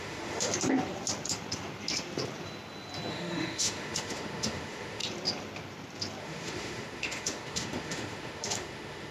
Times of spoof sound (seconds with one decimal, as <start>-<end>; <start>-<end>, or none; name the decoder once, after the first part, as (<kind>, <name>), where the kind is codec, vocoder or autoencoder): 0.0-0.5 (autoencoder, DAC-VAE); 3.1-5.0; 6.2-9.1